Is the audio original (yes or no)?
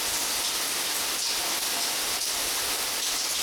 yes